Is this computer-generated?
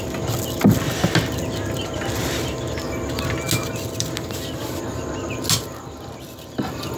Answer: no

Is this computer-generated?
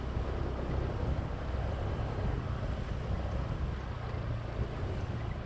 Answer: no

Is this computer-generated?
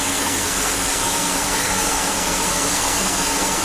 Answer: yes